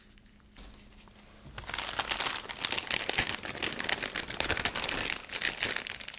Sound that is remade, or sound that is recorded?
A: recorded